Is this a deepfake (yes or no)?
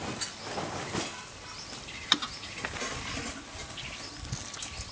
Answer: no